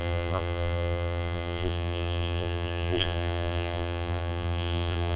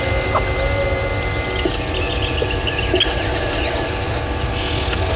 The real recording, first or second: second